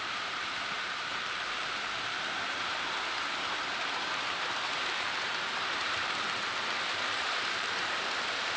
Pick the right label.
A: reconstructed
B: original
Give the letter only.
A